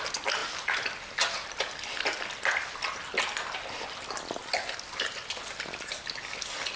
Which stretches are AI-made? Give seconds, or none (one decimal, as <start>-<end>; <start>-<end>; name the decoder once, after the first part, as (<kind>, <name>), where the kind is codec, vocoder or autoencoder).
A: none